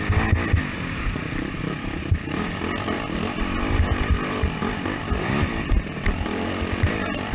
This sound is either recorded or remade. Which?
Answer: recorded